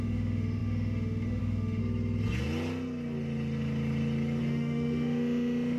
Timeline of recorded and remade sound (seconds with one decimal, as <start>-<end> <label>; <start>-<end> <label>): 0.0-1.8 remade; 1.8-4.4 recorded; 4.4-5.8 remade